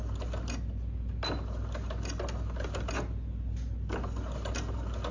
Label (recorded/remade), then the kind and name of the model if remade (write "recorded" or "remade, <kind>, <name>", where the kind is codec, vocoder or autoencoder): recorded